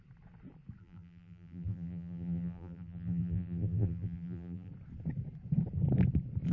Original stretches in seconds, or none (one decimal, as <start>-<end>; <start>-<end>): 0.0-0.8; 4.7-6.5